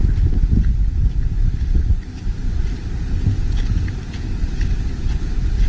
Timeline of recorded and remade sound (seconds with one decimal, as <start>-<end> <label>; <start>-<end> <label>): 0.0-5.7 recorded